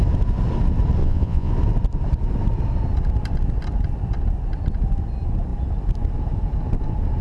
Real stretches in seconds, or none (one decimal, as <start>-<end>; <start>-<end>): 0.0-1.0; 1.5-7.2